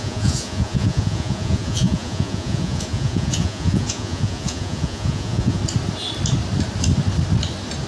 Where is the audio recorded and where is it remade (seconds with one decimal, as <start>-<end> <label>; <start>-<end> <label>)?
0.0-5.6 remade; 5.6-7.9 recorded